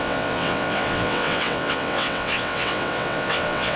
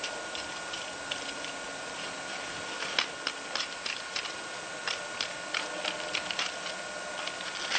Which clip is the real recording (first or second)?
second